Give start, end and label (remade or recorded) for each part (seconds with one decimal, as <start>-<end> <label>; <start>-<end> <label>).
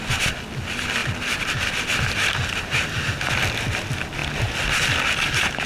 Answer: 0.0-5.7 recorded